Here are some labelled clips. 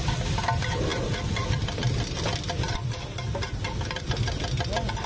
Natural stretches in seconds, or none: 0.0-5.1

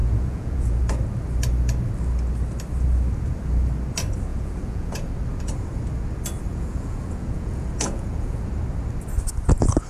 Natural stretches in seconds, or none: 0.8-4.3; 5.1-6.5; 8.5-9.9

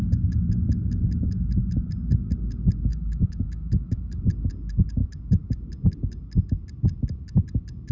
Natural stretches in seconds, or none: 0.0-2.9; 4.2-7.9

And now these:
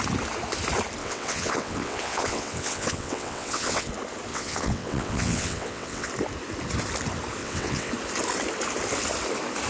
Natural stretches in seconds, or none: 0.0-1.0; 3.9-4.3; 6.1-7.4; 7.9-9.7

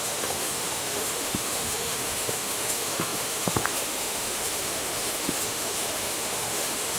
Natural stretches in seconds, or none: none

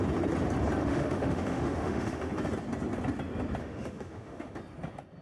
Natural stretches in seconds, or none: 0.0-0.8; 2.3-3.6; 4.6-5.2

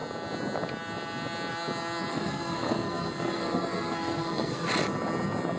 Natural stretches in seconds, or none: 0.0-2.1; 4.7-5.6

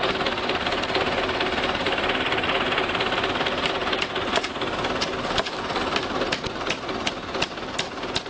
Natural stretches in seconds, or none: 0.0-8.3